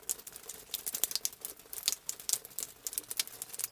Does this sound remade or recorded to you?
recorded